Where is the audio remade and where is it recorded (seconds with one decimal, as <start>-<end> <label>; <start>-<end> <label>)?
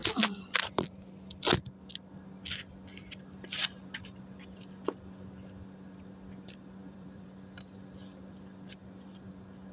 0.0-0.9 remade; 0.9-6.8 recorded; 6.8-7.7 remade; 7.7-9.7 recorded